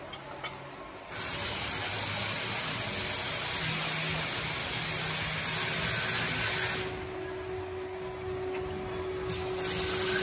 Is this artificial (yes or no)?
no